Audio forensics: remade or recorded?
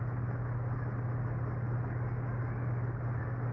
recorded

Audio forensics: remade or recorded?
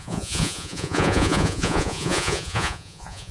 remade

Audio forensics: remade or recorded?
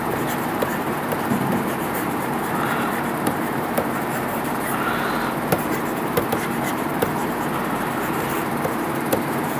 remade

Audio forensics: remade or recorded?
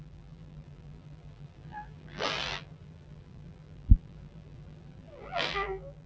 remade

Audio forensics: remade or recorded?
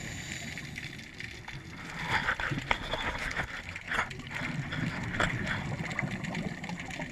recorded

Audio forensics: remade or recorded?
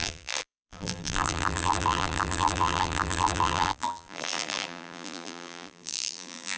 remade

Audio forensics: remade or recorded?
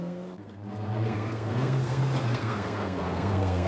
remade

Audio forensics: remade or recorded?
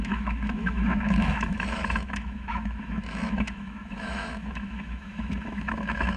remade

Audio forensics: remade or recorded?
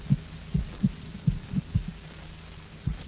recorded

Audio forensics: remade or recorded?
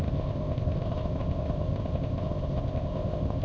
remade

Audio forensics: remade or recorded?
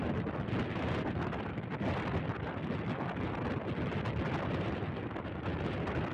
recorded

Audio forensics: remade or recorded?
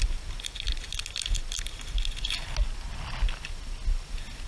recorded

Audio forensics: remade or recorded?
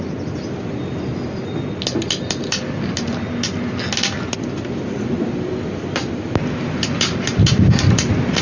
recorded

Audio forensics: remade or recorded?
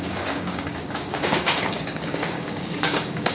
remade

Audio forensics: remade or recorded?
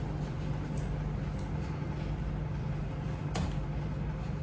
recorded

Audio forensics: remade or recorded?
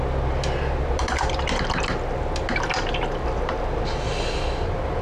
recorded